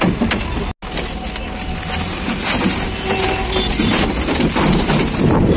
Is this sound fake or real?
real